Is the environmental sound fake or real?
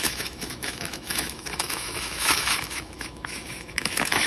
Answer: fake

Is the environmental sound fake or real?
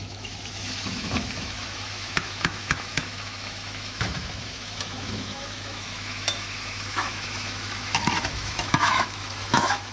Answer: fake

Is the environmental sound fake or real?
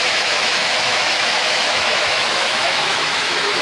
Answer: fake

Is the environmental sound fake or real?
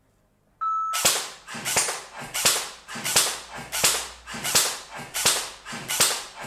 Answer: real